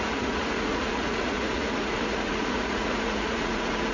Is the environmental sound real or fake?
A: fake